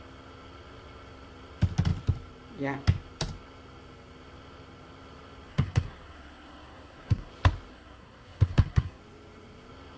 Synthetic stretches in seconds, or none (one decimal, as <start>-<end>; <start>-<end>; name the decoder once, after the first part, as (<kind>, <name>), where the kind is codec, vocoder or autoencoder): 5.5-7.3 (codec, SNAC); 7.7-9.0

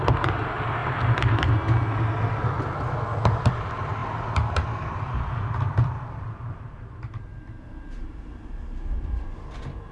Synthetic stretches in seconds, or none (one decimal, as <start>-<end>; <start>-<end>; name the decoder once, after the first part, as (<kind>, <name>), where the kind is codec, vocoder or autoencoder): 0.0-0.8 (vocoder, BigVGAN v2); 3.5-9.9

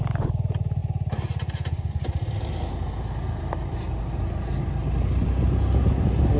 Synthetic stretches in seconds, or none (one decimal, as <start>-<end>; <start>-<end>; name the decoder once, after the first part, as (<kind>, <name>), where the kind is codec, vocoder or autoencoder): none